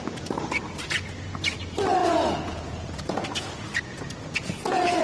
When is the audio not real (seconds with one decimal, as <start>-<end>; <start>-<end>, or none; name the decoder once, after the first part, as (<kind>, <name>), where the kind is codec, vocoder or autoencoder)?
2.0-5.0 (vocoder, Vocos)

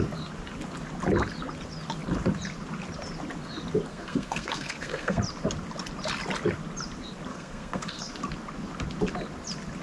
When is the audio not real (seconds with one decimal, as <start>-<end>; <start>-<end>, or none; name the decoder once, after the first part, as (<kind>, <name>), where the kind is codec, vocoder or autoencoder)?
3.9-5.2 (codec, SNAC); 7.3-8.1